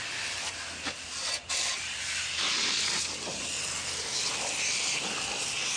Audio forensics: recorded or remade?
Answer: recorded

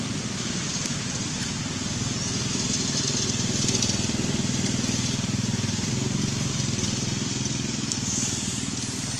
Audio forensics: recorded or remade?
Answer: recorded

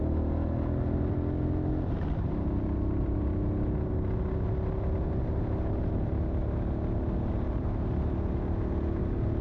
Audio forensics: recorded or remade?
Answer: recorded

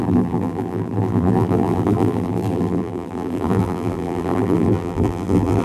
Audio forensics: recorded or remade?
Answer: remade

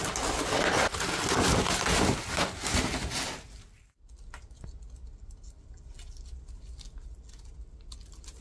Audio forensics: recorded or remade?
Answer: recorded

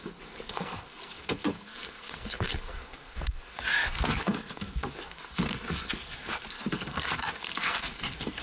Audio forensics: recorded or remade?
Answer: remade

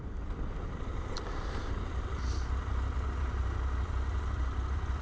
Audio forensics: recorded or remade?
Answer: remade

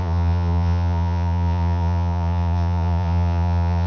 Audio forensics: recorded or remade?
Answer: remade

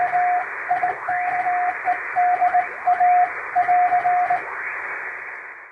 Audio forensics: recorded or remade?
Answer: recorded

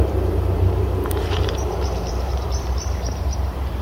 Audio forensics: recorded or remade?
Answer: remade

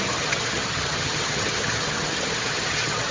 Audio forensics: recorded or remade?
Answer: remade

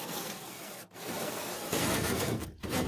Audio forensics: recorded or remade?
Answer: remade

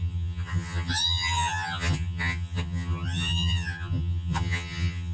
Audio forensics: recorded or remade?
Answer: remade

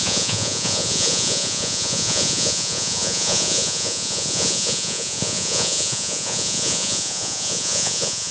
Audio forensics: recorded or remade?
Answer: remade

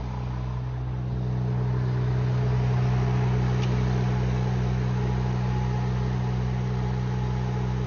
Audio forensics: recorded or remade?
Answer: recorded